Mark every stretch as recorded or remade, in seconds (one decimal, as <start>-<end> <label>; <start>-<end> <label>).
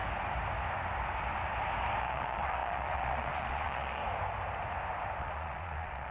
0.0-2.0 recorded; 2.0-4.0 remade; 4.0-5.2 recorded; 5.2-6.1 remade